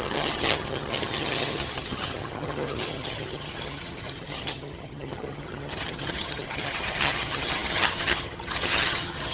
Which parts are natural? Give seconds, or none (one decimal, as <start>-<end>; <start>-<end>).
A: none

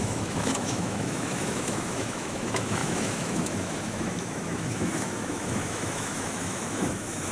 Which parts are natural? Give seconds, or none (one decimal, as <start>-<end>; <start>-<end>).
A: none

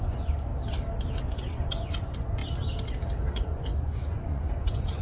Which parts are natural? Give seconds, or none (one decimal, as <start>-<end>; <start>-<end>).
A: 0.5-1.2; 2.4-3.3

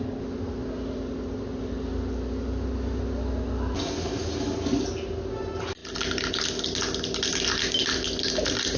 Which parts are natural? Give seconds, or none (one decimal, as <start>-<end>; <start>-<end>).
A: 0.0-8.8

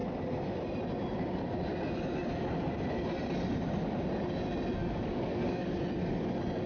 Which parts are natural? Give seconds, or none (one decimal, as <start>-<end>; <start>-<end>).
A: 0.0-4.8; 5.8-6.7

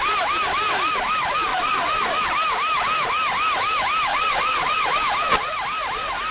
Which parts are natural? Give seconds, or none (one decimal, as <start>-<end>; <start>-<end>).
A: 0.0-1.5; 2.2-4.1; 5.0-6.3

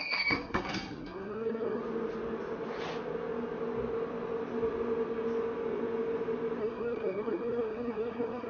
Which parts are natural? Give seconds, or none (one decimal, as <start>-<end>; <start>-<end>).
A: 1.8-6.6